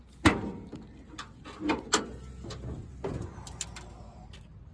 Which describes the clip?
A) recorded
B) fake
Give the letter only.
A